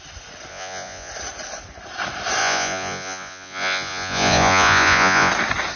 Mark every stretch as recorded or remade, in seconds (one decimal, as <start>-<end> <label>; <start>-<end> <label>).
0.0-0.5 recorded; 0.5-1.1 remade; 1.1-2.4 recorded; 2.4-5.3 remade; 5.3-5.8 recorded